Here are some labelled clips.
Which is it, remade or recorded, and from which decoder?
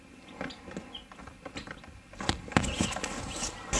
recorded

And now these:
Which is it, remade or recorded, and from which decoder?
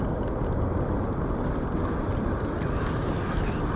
recorded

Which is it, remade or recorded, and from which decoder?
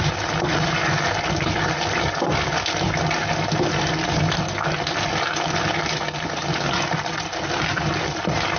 recorded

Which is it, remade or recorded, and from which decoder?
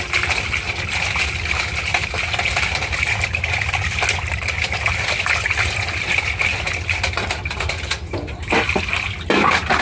recorded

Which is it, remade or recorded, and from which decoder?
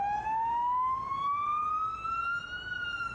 recorded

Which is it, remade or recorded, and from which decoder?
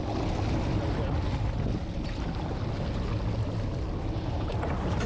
recorded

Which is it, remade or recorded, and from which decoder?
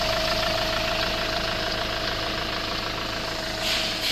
recorded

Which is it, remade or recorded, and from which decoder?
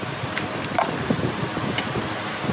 recorded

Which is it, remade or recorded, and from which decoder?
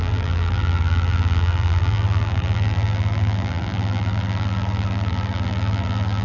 remade, vocoder, BigVGAN v2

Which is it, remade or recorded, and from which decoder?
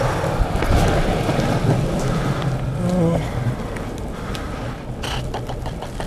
recorded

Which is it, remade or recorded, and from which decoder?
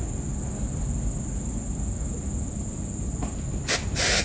recorded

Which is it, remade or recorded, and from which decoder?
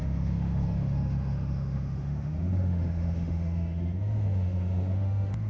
remade, autoencoder, DAC-VAE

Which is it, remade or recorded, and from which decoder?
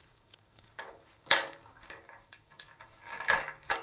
remade, codec, DAC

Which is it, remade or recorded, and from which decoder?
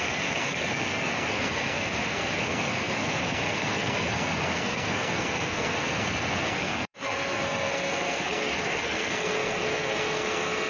remade, codec, SNAC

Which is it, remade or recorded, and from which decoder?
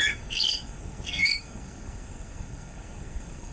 remade, codec, SNAC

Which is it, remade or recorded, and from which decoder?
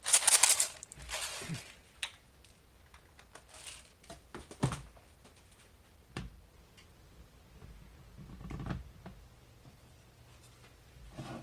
recorded